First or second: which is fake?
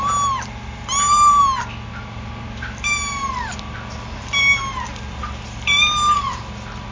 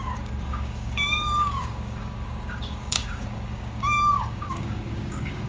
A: second